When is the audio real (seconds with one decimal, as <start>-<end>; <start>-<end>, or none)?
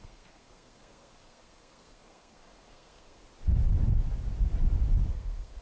3.2-5.1